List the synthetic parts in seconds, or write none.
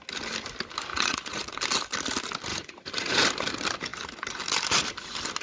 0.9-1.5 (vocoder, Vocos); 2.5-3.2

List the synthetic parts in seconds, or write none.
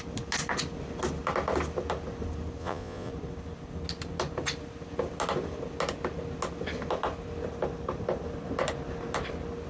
2.6-3.1 (vocoder, Vocos)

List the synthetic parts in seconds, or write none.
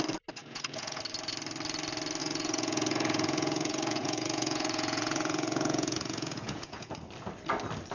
0.4-1.0 (vocoder, Vocos); 2.2-6.9